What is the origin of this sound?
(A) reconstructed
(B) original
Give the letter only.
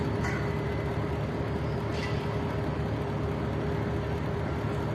B